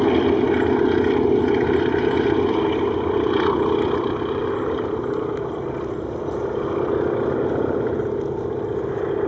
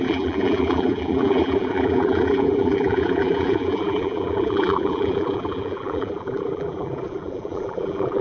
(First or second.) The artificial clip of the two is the second